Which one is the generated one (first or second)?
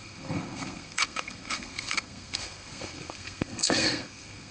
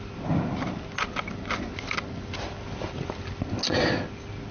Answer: first